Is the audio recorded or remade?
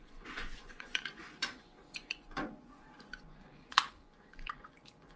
remade